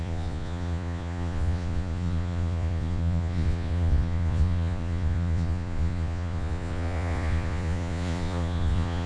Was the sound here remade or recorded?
remade